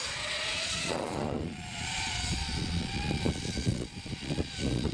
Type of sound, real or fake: fake